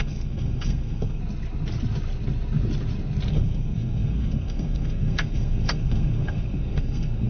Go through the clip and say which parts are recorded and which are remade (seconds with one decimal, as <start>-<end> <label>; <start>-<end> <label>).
0.0-1.2 remade; 1.2-3.3 recorded; 3.3-7.3 remade